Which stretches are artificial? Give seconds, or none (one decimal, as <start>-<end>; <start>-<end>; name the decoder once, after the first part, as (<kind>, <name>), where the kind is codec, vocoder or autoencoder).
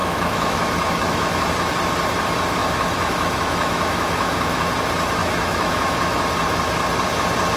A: 0.0-1.5 (autoencoder, DAC-VAE); 2.6-4.7; 5.2-6.2